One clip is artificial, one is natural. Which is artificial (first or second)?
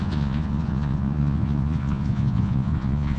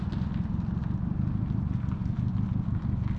first